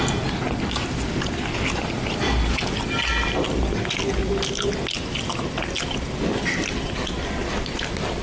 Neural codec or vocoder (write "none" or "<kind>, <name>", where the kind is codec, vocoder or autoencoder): none